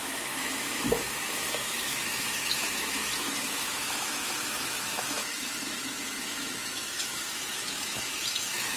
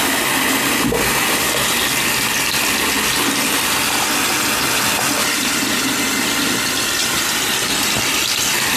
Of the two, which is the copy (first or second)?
first